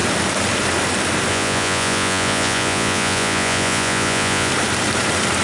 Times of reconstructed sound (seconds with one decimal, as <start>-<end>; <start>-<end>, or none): 1.3-4.5